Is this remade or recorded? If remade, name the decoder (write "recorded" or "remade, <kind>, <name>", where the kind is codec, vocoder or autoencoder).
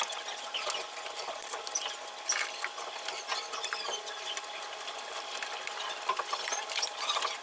recorded